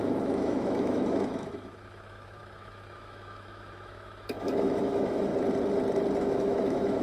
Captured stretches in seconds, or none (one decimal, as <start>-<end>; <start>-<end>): 5.3-6.2